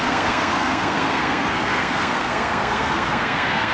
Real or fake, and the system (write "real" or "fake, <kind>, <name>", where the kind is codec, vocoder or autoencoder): fake, codec, SNAC